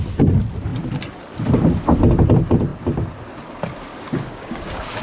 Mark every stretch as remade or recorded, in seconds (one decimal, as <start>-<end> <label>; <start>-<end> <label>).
0.0-3.9 recorded; 3.9-5.0 remade